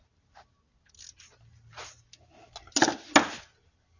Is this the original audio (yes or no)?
yes